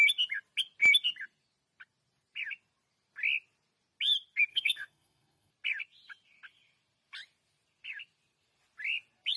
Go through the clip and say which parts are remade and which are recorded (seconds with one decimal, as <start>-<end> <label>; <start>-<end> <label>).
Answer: 0.0-4.5 recorded; 4.5-5.5 remade; 5.5-9.4 recorded